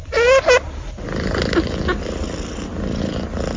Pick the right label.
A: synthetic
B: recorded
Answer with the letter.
B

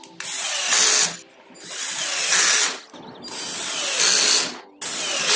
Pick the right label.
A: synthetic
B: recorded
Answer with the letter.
B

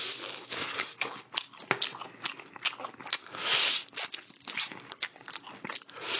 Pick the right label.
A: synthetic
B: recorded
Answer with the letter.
B